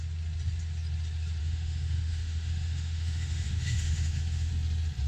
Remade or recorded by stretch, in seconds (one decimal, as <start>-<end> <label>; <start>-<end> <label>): 0.0-1.4 recorded; 1.4-4.5 remade; 4.5-5.1 recorded